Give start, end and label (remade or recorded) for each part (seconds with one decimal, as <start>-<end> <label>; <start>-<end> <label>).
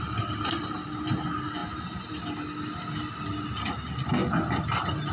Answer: 0.0-5.1 recorded